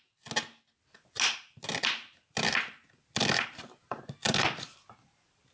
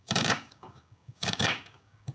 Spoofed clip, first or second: second